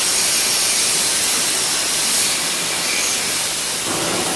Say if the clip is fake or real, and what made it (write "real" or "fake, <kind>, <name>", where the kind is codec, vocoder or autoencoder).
real